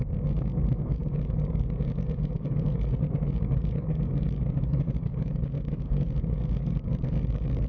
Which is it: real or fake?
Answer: fake